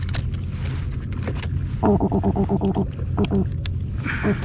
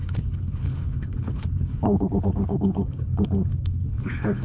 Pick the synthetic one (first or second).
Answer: second